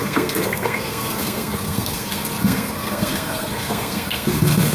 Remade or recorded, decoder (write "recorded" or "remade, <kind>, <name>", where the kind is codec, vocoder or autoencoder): remade, codec, SNAC